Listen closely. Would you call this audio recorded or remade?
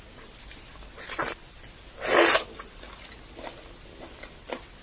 recorded